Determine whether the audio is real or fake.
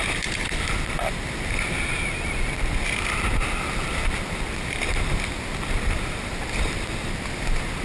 real